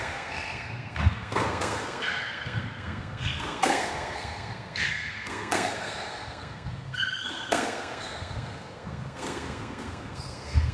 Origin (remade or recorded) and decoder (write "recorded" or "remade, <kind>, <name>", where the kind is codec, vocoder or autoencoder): remade, codec, SNAC